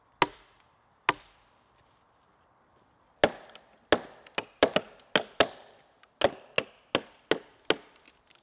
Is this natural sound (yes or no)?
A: yes